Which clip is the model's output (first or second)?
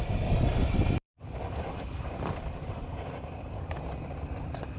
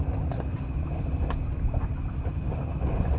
first